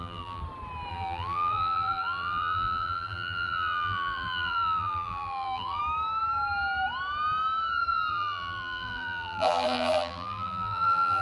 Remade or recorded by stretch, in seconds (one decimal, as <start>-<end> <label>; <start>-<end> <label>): 0.0-0.4 remade; 0.4-0.9 recorded; 0.9-5.8 remade; 5.8-8.1 recorded; 8.1-11.2 remade